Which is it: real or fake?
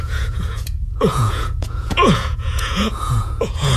fake